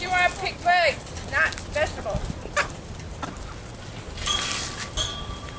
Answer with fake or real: real